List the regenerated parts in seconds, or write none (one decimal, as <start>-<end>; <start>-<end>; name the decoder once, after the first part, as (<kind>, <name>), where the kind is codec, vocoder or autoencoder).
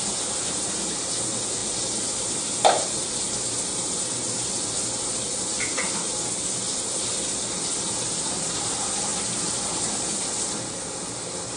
none